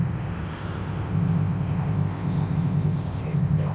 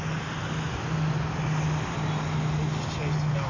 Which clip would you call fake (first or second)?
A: first